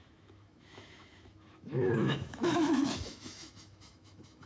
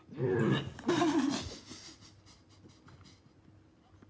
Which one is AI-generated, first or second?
first